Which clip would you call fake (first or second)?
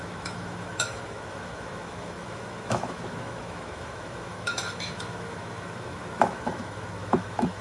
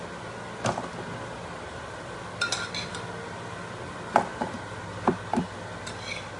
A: first